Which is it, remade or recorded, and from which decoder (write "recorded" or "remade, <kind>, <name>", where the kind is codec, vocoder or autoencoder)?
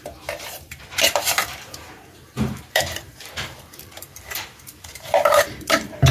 remade, vocoder, BigVGAN v2